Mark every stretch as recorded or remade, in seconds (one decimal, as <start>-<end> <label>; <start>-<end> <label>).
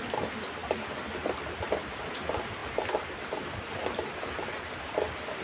0.0-5.4 recorded